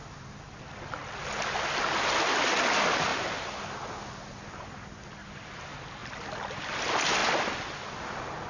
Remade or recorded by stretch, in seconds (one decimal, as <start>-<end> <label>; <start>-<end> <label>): 0.0-8.5 recorded